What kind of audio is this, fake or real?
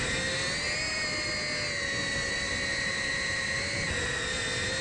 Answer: real